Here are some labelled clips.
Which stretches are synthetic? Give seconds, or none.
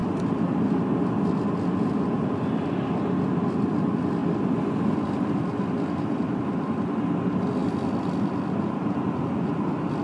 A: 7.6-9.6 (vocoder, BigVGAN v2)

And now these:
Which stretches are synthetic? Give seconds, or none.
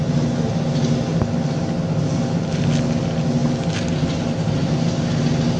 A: none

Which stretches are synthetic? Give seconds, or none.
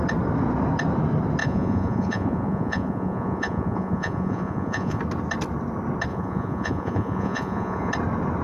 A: 1.4-5.0 (vocoder, Vocos); 6.1-7.9